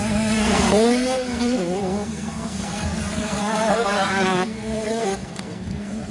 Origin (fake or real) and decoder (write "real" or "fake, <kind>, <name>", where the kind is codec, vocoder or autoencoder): fake, codec, SNAC